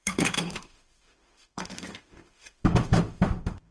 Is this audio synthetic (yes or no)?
yes